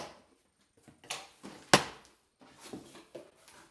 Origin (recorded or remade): recorded